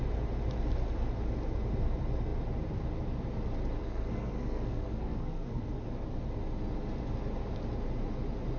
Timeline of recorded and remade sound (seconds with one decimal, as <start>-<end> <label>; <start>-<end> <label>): 0.0-3.8 recorded; 3.8-5.8 remade; 5.8-8.6 recorded